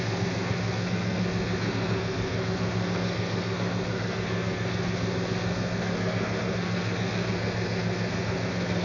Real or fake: fake